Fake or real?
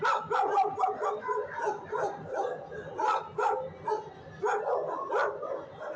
real